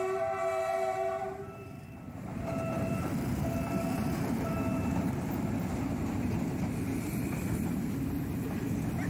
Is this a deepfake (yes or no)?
yes